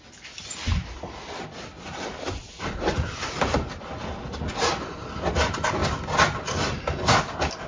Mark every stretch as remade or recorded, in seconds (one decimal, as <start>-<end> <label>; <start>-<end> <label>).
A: 0.0-7.7 recorded